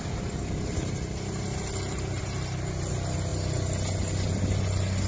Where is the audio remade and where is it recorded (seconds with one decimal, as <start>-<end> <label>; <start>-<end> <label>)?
0.0-5.1 recorded